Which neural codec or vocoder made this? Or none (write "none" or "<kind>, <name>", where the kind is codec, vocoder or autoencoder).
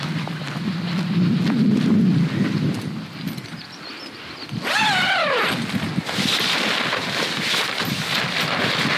none